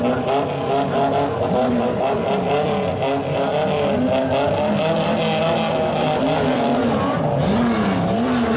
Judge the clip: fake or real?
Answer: real